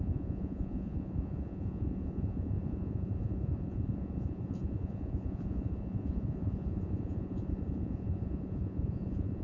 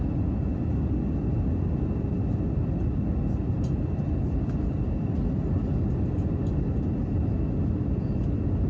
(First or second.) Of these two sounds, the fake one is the first